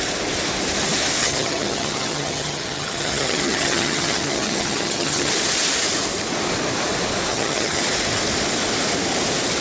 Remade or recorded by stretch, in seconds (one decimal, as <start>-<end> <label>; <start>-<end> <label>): 0.0-1.2 recorded; 1.2-5.3 remade; 5.3-7.3 recorded; 7.3-7.8 remade; 7.8-9.6 recorded